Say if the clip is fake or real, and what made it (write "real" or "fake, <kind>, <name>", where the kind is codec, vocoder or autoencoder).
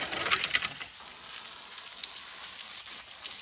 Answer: real